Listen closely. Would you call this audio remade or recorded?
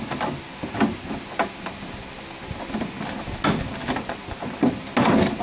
recorded